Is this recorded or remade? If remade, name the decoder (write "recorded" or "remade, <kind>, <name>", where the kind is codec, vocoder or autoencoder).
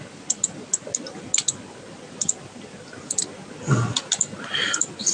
recorded